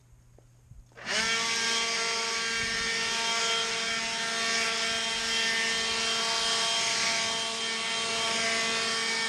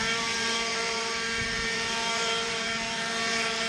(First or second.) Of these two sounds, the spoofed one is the second